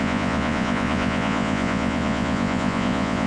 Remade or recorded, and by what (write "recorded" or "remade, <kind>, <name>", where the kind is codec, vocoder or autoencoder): remade, vocoder, Vocos